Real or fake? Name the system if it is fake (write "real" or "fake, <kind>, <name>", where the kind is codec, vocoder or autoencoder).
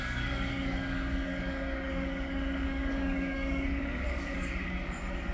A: fake, codec, DAC